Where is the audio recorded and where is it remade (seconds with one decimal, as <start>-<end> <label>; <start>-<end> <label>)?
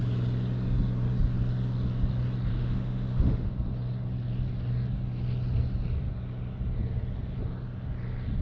0.0-2.5 recorded; 2.5-3.5 remade; 3.5-8.4 recorded